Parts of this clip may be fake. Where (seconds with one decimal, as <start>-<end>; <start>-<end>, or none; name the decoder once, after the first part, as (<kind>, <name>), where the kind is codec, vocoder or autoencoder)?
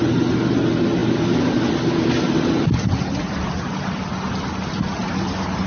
none